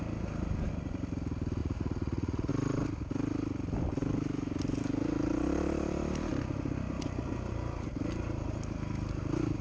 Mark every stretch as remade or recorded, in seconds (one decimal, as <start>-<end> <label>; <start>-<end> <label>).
0.0-1.6 recorded; 1.6-2.5 remade; 2.5-9.6 recorded